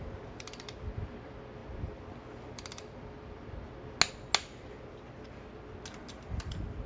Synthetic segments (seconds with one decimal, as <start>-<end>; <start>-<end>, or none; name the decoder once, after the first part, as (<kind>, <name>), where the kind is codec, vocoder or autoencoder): none